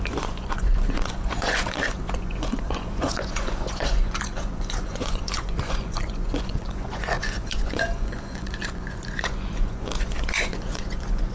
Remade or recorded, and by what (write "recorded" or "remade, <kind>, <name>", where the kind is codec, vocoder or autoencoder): remade, vocoder, Vocos